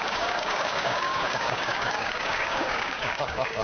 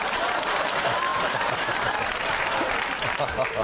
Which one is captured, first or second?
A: second